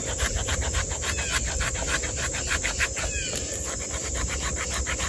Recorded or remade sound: recorded